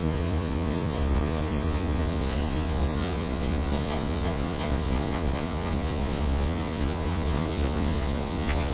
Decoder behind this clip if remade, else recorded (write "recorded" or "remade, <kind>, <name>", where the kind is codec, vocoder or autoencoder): remade, vocoder, Vocos